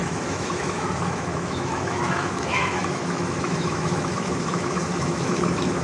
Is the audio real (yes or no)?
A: no